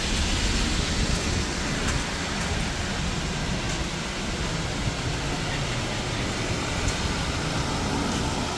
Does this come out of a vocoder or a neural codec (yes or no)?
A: no